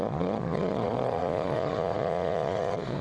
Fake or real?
fake